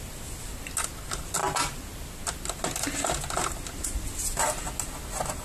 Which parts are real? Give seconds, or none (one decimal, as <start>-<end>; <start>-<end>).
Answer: 0.0-5.4